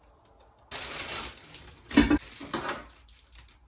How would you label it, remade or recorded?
recorded